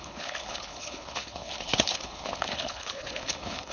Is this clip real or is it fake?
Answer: fake